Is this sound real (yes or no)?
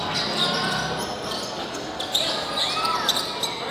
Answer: yes